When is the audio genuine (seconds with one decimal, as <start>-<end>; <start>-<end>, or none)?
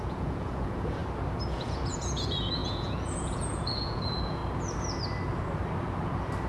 1.0-1.5; 4.4-6.5